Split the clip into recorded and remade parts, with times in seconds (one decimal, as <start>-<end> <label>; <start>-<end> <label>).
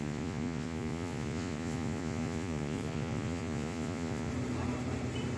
0.0-4.3 remade; 4.3-5.4 recorded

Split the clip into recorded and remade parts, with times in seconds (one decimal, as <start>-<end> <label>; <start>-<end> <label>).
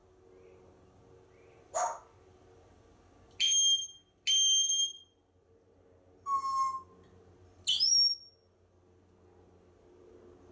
0.0-10.5 recorded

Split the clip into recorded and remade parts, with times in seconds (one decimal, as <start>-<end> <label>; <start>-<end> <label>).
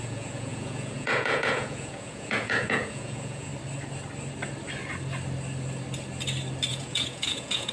0.0-3.5 remade; 3.5-6.7 recorded; 6.7-7.7 remade